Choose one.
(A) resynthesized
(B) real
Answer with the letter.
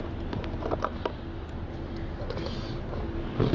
B